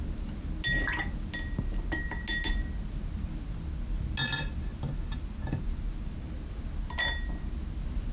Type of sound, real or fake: real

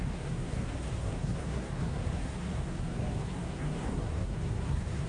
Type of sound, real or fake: fake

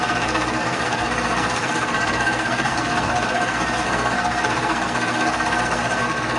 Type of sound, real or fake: fake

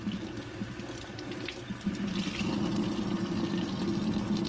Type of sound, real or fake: real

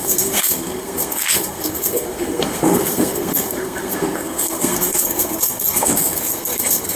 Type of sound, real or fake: fake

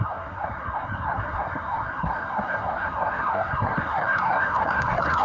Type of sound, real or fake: fake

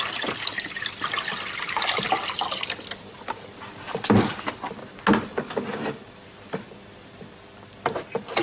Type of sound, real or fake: real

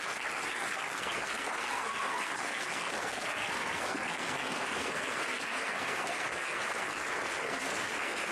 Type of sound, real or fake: fake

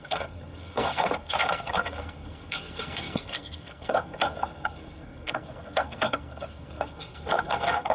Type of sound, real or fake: fake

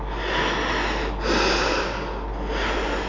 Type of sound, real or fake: real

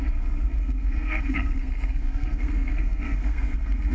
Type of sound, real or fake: fake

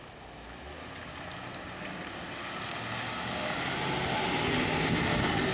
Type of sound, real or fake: real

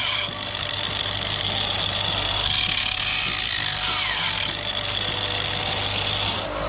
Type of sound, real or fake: real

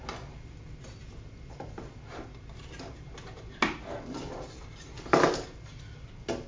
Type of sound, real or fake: real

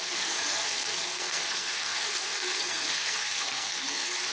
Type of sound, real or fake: fake